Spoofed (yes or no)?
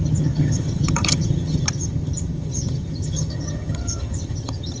yes